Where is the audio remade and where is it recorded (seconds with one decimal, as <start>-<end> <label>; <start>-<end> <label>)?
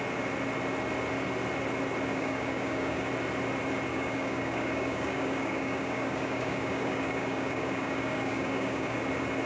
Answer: 0.0-2.1 recorded; 2.1-3.1 remade; 3.1-3.9 recorded; 3.9-9.0 remade; 9.0-9.5 recorded